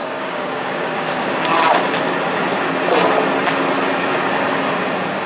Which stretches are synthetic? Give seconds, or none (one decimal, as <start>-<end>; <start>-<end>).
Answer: 0.0-1.4